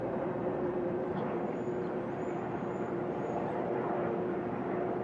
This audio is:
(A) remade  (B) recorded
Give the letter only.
A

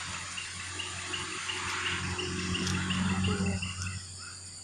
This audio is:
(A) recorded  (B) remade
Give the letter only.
A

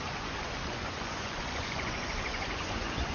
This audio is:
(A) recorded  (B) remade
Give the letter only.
B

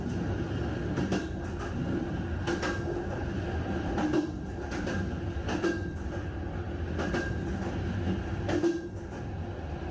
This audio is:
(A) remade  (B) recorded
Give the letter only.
B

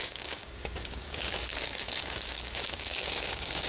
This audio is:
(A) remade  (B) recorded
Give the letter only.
A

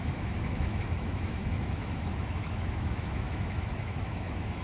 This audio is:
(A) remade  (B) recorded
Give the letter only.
A